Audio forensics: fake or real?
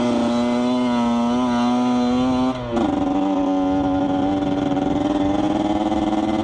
real